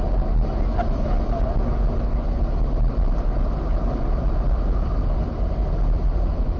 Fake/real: real